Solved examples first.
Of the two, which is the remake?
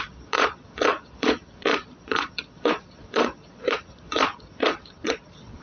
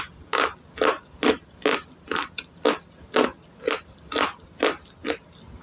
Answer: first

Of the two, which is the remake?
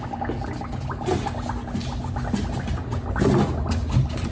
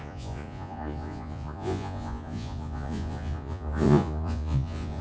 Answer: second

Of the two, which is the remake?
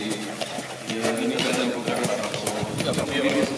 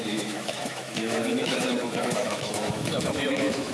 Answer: second